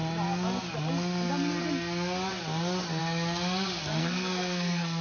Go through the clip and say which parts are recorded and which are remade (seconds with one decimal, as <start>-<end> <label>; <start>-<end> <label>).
0.0-4.0 recorded; 4.0-5.0 remade

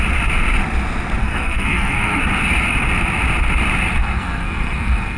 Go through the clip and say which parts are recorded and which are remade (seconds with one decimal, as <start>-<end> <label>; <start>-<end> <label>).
0.0-1.2 recorded; 1.2-2.2 remade; 2.2-4.0 recorded; 4.0-5.2 remade

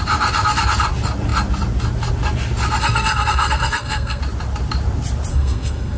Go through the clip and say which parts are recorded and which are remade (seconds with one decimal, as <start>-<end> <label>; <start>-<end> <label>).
0.0-2.8 recorded; 2.8-4.2 remade; 4.2-5.3 recorded; 5.3-6.0 remade

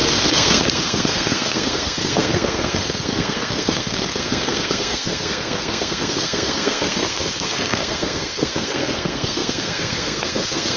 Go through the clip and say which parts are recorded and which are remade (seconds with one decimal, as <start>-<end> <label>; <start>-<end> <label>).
0.0-10.8 remade

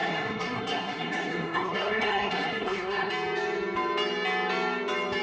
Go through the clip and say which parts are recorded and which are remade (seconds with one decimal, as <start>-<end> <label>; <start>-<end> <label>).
0.0-3.1 remade; 3.1-5.2 recorded

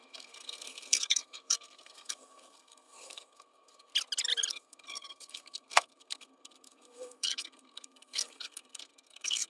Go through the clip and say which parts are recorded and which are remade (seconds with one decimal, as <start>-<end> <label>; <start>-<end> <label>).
0.0-3.9 remade; 3.9-4.5 recorded; 4.5-9.5 remade